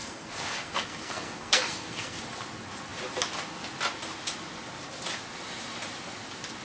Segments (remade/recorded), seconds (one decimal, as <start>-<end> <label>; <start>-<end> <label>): 0.0-2.2 remade; 2.2-6.6 recorded